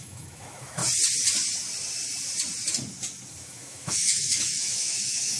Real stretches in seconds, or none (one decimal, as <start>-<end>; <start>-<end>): 0.8-3.4